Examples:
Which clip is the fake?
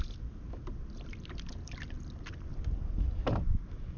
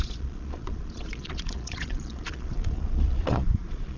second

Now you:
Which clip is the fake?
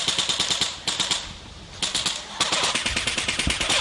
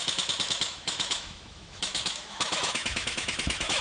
second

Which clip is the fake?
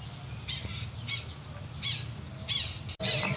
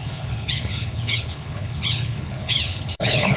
second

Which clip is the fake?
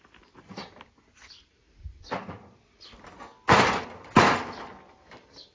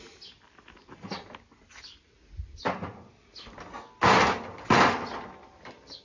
first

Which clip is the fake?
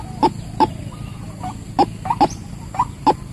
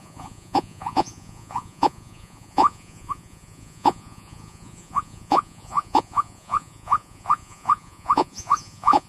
second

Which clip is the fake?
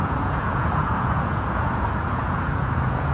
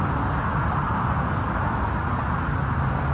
first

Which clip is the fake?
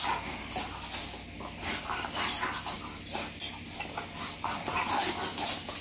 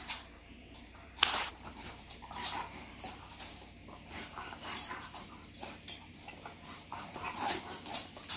second